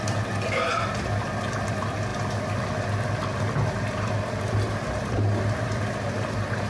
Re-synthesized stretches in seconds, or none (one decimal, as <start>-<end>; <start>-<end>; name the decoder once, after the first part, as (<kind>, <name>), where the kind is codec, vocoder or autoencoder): none